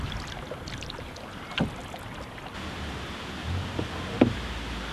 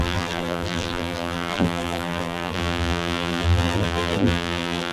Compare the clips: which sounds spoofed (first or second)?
second